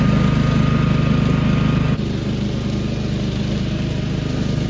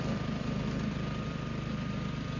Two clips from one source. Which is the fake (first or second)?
second